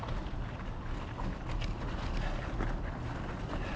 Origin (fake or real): real